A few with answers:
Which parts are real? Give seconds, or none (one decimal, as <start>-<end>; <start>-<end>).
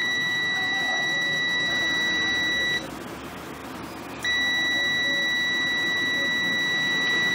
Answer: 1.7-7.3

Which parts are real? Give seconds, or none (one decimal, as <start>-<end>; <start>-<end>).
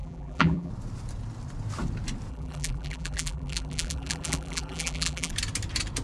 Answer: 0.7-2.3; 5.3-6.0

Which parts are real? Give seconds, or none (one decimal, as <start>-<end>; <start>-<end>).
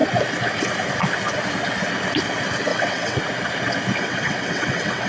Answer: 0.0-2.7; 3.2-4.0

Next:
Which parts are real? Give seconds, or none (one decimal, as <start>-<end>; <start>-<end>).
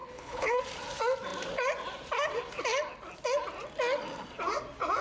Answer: 0.6-5.0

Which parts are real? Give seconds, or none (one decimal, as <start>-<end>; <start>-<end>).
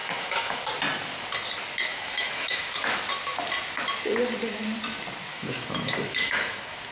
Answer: 0.6-1.9; 3.0-5.3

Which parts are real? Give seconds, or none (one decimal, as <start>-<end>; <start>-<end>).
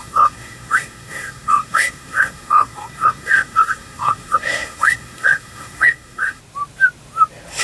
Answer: 6.4-7.6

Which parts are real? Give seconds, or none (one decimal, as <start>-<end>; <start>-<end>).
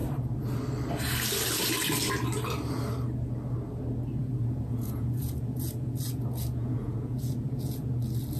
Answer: 0.0-4.2; 7.9-8.4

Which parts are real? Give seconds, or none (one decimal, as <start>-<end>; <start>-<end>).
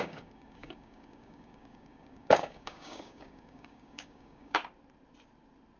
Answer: 4.6-5.8